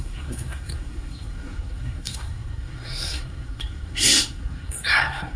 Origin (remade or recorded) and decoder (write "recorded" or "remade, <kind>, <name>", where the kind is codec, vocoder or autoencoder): remade, codec, SNAC